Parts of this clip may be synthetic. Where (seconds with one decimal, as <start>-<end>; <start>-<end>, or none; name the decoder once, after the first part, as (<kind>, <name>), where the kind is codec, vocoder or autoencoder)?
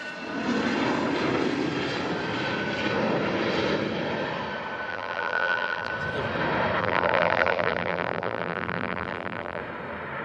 4.9-5.9 (vocoder, BigVGAN v2); 6.8-9.6